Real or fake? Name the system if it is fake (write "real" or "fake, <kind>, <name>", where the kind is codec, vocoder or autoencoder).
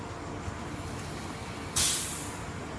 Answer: real